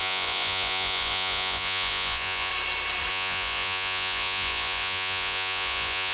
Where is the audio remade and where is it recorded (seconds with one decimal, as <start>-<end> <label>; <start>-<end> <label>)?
0.0-2.5 remade; 2.5-3.1 recorded; 3.1-6.1 remade